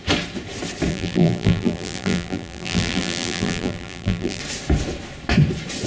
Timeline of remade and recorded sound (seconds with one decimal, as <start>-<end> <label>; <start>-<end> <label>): 0.0-0.9 recorded; 0.9-4.4 remade; 4.4-5.9 recorded